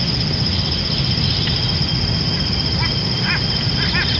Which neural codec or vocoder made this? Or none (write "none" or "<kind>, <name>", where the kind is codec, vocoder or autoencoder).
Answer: none